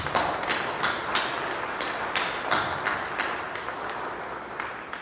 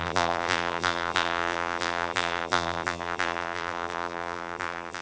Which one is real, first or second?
first